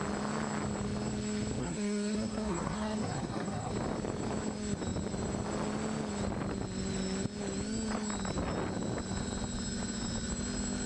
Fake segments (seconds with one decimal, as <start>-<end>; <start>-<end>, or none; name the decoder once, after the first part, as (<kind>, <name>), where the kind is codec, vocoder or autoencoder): 1.6-3.7 (codec, SNAC)